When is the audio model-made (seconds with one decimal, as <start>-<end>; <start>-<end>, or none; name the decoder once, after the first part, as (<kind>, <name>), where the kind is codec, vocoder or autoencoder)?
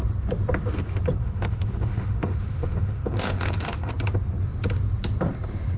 1.2-3.9 (autoencoder, DAC-VAE)